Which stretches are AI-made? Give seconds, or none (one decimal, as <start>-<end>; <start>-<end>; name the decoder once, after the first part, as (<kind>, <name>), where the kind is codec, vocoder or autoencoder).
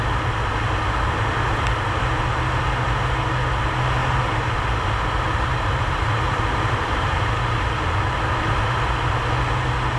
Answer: 4.0-4.6 (vocoder, BigVGAN v2); 5.5-8.0